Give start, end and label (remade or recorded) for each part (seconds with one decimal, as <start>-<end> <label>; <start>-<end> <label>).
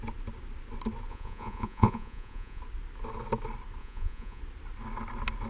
0.0-1.1 recorded; 1.1-2.6 remade; 2.6-3.8 recorded; 3.8-4.4 remade; 4.4-5.5 recorded